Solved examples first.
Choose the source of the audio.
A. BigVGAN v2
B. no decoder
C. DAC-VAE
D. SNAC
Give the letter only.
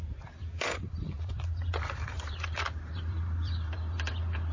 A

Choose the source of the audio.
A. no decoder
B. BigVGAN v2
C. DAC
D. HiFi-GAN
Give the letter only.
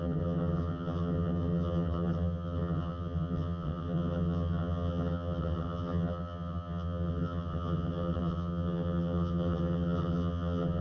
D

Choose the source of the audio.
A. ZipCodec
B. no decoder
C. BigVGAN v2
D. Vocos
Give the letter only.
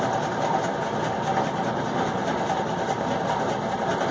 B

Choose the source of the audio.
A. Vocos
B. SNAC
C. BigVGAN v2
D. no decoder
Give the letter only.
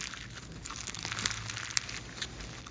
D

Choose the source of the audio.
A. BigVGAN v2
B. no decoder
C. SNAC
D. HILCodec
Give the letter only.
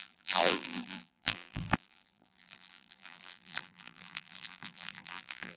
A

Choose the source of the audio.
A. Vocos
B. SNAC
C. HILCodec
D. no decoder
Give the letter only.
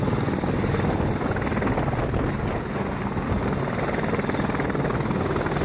D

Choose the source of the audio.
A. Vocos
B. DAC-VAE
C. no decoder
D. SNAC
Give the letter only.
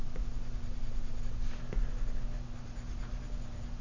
C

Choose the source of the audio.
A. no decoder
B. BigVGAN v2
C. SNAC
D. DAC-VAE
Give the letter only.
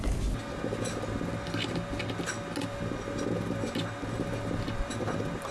A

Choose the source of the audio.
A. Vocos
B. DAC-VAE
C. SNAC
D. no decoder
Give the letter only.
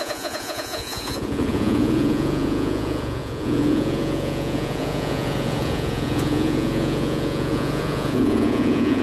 A